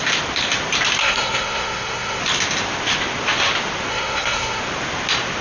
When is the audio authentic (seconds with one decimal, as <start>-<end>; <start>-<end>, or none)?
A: 0.0-1.0; 2.2-3.9; 4.6-5.4

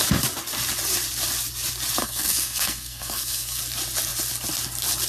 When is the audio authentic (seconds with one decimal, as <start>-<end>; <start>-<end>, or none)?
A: 0.0-2.0; 3.6-5.1

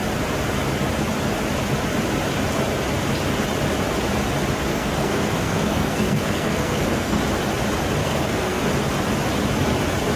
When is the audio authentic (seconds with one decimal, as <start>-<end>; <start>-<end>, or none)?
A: 0.0-4.7; 7.2-8.0; 8.6-10.2

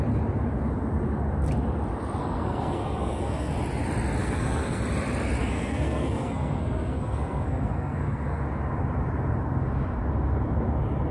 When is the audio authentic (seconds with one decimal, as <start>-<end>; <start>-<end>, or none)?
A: 0.0-2.2; 3.5-4.2; 4.8-5.4; 8.4-11.1

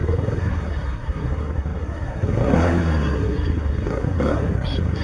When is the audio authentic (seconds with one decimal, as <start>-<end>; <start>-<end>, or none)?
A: none

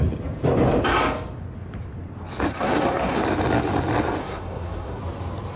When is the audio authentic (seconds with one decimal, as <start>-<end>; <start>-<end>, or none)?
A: 0.0-2.5; 3.2-4.2; 5.0-5.6